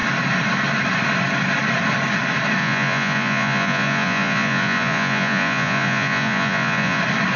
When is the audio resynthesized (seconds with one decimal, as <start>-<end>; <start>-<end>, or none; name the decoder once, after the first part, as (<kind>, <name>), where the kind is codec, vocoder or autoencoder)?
2.6-7.0 (vocoder, Vocos)